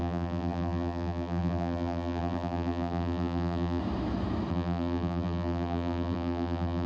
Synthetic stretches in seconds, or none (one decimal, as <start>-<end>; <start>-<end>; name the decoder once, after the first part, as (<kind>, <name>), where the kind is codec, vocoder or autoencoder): 0.0-3.8 (vocoder, BigVGAN v2); 4.5-6.9